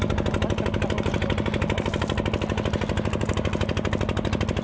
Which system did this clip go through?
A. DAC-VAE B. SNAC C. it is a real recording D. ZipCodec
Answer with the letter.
C